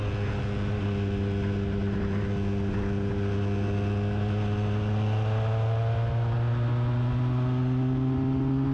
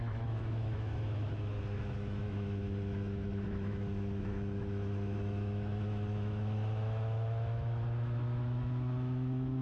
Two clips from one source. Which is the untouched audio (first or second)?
first